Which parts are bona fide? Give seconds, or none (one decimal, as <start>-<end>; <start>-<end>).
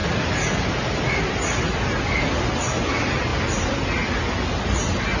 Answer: 0.0-5.2